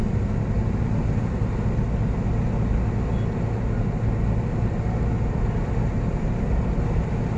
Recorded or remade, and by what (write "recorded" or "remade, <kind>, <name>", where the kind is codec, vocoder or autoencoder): recorded